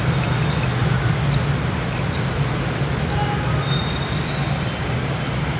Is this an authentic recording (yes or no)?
yes